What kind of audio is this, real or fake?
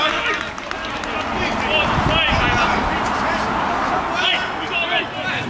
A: real